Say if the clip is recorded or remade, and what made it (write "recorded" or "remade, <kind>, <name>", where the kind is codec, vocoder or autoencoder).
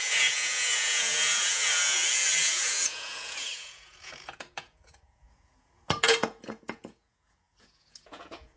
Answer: remade, vocoder, Vocos